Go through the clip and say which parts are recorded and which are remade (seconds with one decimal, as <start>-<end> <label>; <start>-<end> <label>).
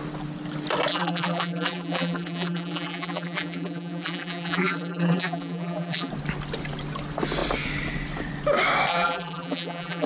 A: 0.0-0.9 recorded; 0.9-6.1 remade; 6.1-8.9 recorded; 8.9-10.1 remade